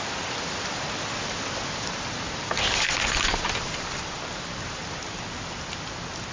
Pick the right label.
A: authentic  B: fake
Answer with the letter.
A